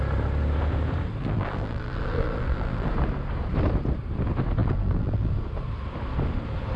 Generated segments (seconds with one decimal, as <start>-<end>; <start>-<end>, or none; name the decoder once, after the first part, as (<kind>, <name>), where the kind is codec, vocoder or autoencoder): 1.2-2.9 (vocoder, BigVGAN v2); 4.6-5.3